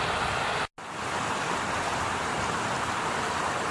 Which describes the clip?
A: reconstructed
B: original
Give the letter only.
B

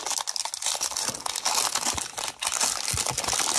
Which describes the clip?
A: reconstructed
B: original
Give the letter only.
B